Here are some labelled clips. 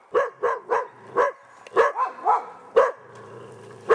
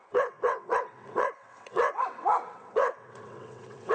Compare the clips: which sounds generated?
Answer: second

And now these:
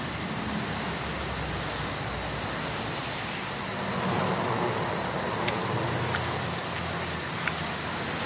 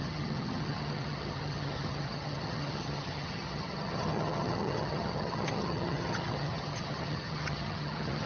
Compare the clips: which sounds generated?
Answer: second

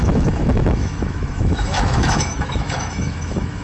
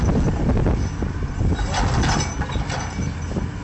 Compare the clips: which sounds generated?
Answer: first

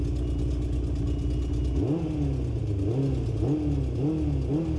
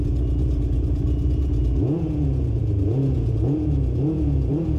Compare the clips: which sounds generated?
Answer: second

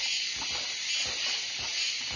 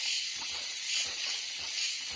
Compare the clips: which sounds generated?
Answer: second